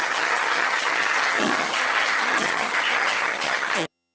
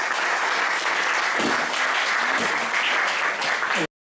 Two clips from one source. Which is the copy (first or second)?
first